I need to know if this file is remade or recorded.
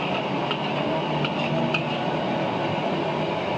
recorded